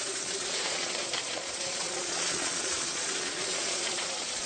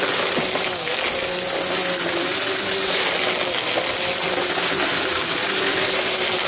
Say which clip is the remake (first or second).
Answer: first